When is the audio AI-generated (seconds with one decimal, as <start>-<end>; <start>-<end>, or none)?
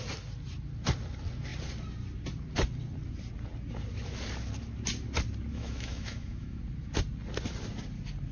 5.5-6.6